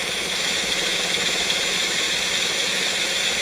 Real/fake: fake